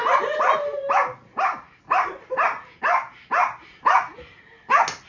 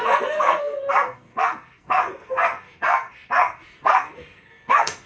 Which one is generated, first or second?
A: second